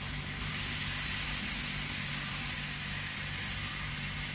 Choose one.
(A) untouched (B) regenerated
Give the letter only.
A